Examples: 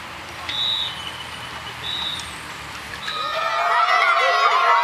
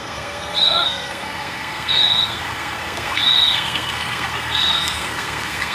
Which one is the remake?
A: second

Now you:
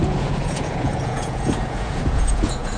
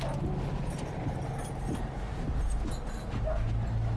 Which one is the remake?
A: first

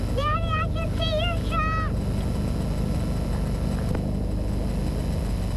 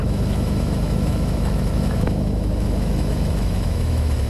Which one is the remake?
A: second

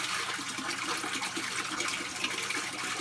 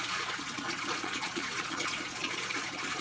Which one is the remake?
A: second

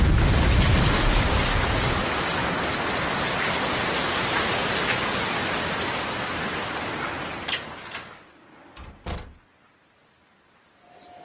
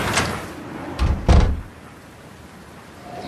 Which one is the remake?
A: second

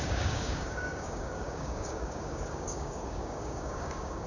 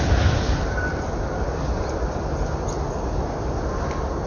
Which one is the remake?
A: first